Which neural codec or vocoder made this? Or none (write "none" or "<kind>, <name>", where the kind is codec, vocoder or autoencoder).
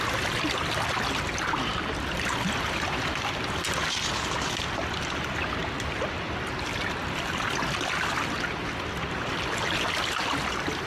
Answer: none